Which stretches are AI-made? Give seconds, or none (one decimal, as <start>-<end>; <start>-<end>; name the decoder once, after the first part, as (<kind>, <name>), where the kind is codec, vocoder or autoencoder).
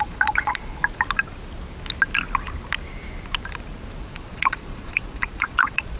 0.0-0.7 (vocoder, Vocos); 4.0-6.0